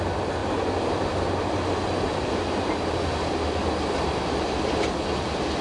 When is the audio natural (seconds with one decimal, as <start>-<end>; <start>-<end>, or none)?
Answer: 0.0-5.6